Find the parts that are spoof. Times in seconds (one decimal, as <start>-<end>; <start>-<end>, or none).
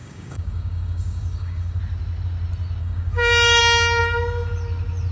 0.0-1.8; 2.8-3.6